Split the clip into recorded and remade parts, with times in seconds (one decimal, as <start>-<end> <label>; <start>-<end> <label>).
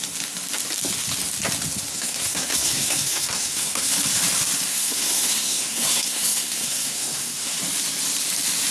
0.0-1.9 recorded; 1.9-3.9 remade; 3.9-4.7 recorded; 4.7-7.6 remade; 7.6-8.7 recorded